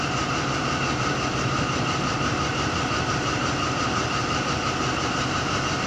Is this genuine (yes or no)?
no